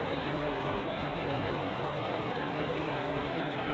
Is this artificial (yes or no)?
yes